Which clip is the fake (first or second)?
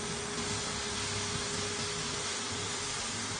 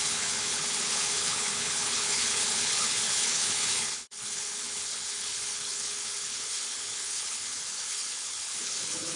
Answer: second